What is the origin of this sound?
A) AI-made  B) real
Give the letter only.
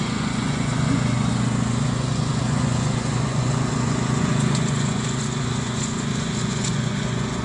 A